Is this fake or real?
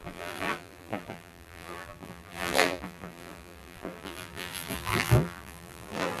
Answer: fake